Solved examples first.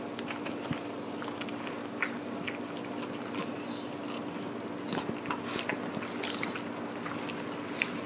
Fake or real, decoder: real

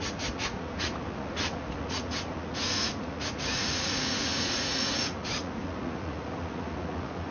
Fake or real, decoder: fake, vocoder, Vocos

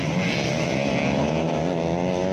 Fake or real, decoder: real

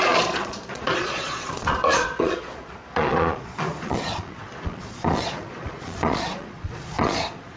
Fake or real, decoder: fake, vocoder, Vocos